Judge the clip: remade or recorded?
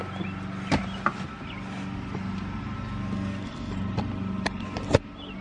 recorded